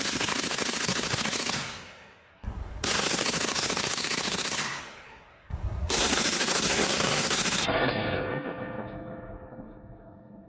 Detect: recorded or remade remade